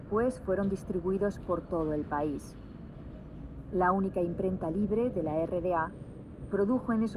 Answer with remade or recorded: recorded